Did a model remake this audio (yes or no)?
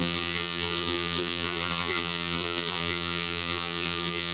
yes